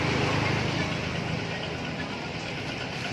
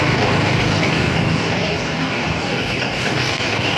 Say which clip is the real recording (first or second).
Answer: first